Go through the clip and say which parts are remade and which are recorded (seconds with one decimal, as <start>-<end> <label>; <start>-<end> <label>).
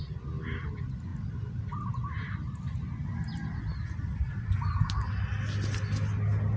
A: 0.0-6.6 recorded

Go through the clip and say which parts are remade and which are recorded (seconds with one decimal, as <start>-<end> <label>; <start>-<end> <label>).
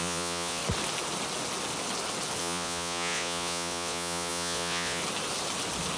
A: 0.0-0.6 remade; 0.6-2.4 recorded; 2.4-5.0 remade; 5.0-6.0 recorded